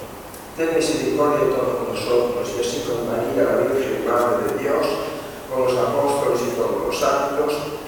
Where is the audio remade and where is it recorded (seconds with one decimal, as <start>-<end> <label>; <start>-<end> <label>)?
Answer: 0.0-5.0 recorded; 5.0-6.3 remade; 6.3-7.9 recorded